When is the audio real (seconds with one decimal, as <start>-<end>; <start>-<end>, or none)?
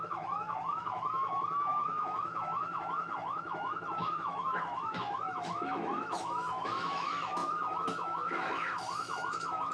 none